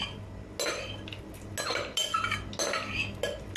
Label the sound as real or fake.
real